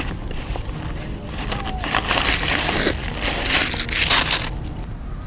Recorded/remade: recorded